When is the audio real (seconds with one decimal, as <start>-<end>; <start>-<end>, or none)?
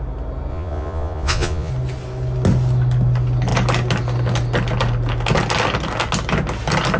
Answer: 0.0-0.5; 1.7-7.0